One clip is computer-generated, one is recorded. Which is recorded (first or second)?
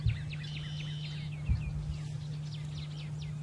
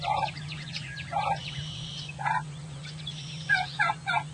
first